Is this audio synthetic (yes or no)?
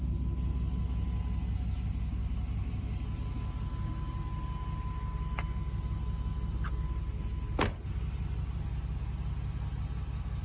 no